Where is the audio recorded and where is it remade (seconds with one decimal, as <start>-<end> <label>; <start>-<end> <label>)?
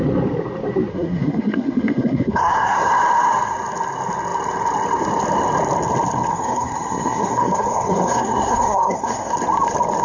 0.0-0.9 recorded; 0.9-2.9 remade; 2.9-6.3 recorded; 6.3-9.3 remade; 9.3-10.0 recorded